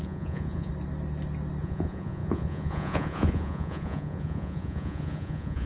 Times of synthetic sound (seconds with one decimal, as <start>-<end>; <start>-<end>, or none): 0.0-0.7; 1.6-5.7